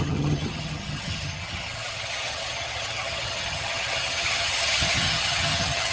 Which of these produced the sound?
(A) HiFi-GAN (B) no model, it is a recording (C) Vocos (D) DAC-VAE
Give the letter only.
A